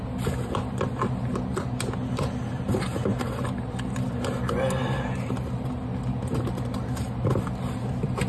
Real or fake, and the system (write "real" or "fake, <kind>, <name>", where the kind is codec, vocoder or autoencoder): real